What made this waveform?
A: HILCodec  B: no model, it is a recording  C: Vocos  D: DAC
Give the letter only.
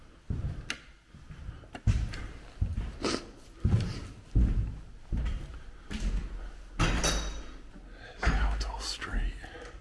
B